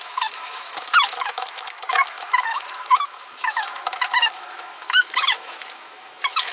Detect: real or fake fake